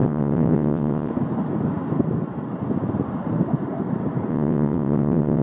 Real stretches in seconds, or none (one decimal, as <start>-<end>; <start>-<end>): 1.1-4.3